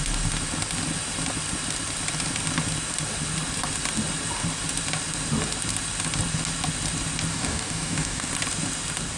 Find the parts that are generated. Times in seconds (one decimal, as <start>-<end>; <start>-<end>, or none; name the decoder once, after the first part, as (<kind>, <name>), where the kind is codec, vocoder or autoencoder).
7.3-8.3 (codec, DAC)